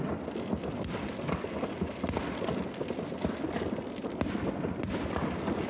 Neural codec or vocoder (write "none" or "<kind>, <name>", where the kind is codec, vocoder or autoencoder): none